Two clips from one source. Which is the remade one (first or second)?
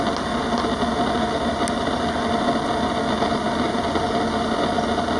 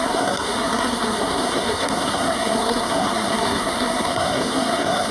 second